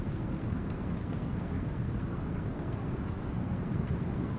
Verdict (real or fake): fake